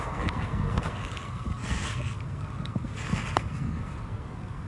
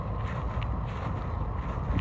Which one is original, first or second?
second